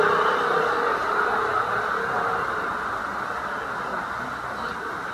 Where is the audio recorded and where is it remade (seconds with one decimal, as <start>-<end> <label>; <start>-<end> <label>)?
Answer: 0.0-5.1 recorded